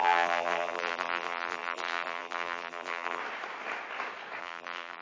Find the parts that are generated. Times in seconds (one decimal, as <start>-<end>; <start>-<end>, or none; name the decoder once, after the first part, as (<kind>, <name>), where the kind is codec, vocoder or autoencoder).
0.0-3.2 (vocoder, BigVGAN v2); 4.4-5.0